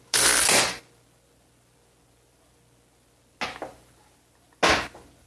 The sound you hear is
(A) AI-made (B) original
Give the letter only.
B